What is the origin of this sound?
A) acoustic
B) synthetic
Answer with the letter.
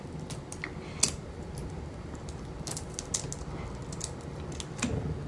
A